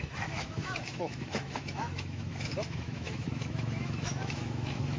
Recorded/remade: remade